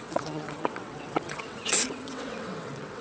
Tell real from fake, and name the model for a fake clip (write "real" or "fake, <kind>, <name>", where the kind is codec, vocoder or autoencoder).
fake, vocoder, WaveNeXt